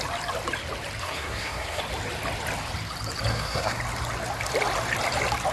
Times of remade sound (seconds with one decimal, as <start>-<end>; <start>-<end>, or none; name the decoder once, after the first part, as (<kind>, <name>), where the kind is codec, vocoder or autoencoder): 1.0-1.8 (codec, SNAC); 3.3-3.8